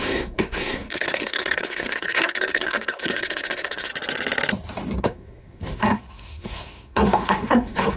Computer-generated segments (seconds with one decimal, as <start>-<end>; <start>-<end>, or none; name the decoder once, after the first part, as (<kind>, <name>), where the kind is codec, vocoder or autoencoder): 0.0-3.9 (codec, SNAC); 5.0-8.0